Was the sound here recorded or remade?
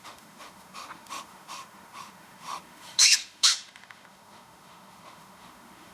remade